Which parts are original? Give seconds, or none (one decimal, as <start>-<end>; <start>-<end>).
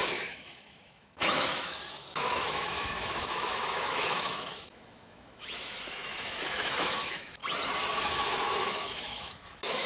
7.4-7.9